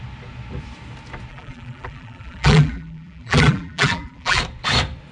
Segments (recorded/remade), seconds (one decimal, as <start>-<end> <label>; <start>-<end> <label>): 0.0-1.3 recorded; 1.3-4.4 remade; 4.4-5.1 recorded